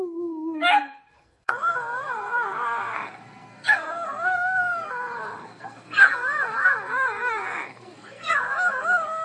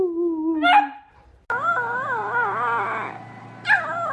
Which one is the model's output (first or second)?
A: first